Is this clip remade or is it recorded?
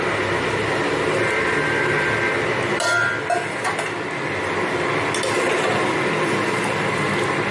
recorded